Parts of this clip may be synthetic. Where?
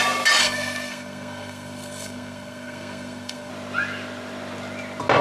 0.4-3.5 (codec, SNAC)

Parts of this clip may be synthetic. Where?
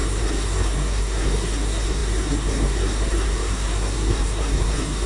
0.0-5.1 (codec, SNAC)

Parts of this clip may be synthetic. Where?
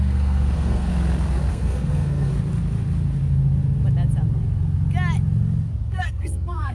0.0-0.9 (codec, SNAC); 1.5-2.3; 5.8-6.7